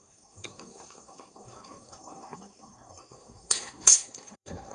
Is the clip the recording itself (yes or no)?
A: no